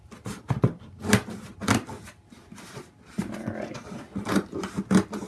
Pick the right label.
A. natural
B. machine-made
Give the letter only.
A